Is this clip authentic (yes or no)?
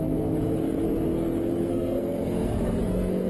no